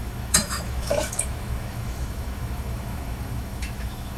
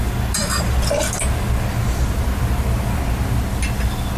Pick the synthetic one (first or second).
first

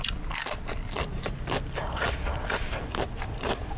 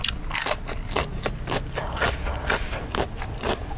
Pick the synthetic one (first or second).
first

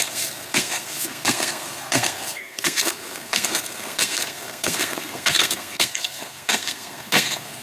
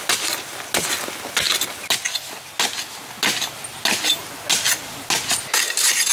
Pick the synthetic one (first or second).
first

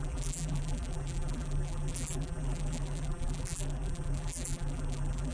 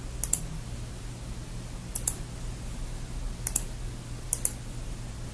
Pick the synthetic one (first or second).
first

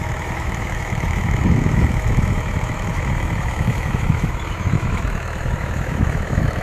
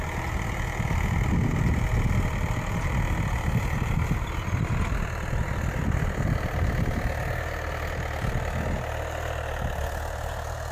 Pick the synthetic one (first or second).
first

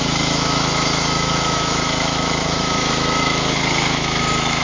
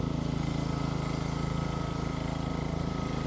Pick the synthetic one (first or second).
first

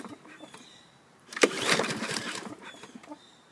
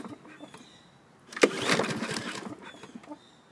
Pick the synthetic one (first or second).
first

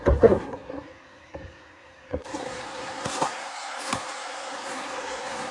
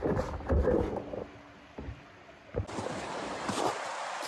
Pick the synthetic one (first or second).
first